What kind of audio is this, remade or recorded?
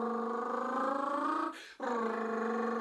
recorded